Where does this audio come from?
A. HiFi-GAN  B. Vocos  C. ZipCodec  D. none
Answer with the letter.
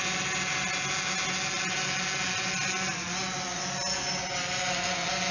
D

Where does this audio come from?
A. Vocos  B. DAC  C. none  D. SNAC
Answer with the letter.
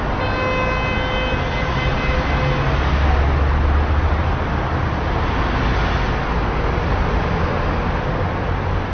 C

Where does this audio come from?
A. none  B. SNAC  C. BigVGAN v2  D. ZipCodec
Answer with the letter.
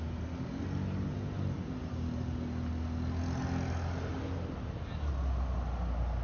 A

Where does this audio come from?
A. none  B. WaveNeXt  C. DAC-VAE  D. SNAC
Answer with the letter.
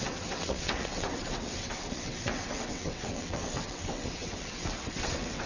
B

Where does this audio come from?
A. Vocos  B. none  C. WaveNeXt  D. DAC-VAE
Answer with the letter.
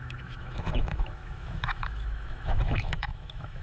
D